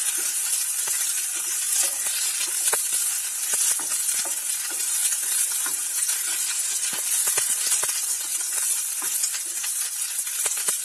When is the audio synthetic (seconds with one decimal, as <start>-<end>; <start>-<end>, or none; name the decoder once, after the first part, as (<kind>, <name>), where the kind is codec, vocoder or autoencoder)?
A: 8.1-8.8 (vocoder, Vocos)